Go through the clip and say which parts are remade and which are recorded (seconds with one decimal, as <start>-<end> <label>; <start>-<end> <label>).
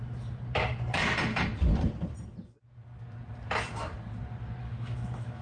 0.0-4.6 recorded; 4.6-5.4 remade